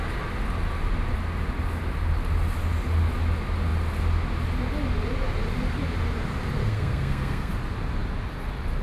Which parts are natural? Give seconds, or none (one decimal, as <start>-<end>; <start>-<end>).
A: 0.0-6.6; 7.5-8.8